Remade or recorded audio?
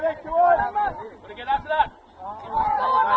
recorded